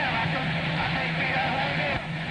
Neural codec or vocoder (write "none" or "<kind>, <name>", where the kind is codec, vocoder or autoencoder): vocoder, Vocos